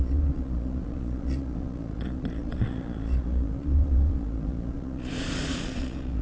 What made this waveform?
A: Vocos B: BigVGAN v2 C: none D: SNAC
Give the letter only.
A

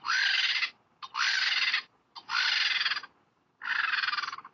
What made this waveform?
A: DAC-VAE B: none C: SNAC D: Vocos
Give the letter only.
B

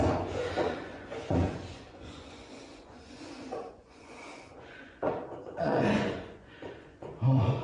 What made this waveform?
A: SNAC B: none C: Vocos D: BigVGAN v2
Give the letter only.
C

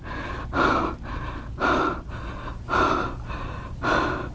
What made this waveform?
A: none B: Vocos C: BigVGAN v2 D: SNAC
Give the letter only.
A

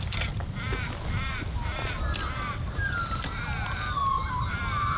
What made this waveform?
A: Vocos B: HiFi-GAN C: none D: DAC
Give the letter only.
C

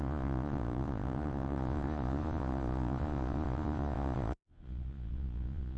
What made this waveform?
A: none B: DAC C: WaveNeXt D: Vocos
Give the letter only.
D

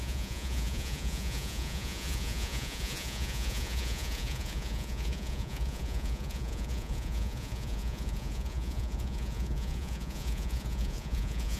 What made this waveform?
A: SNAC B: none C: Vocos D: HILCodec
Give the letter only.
C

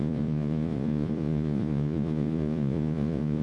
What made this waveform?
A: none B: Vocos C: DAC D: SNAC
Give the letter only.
B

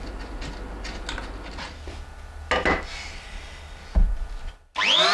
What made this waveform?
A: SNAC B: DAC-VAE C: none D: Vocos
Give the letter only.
C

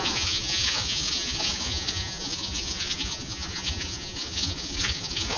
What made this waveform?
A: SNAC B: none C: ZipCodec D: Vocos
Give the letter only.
D